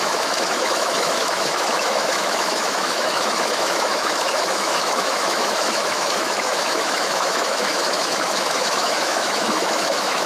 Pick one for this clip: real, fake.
fake